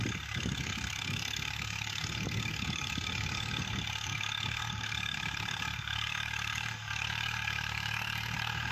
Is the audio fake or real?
fake